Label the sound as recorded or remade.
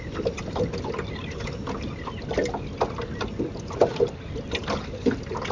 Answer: recorded